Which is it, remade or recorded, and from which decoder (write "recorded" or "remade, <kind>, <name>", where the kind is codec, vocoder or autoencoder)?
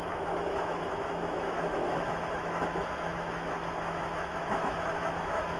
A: remade, autoencoder, DAC-VAE